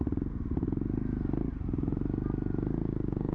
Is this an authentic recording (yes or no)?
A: yes